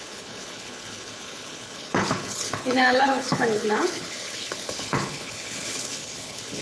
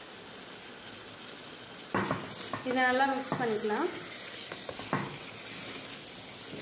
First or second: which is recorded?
second